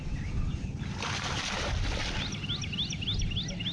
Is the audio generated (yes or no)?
no